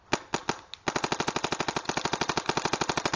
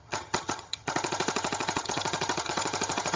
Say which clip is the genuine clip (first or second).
first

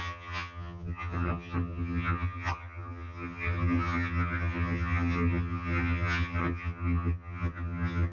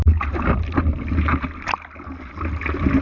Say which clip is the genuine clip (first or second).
second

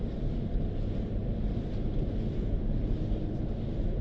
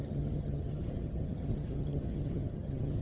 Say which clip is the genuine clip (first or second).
first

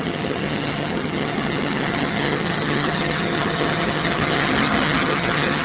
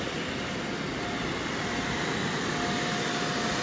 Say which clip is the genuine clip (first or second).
second